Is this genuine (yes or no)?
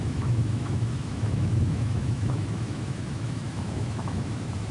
no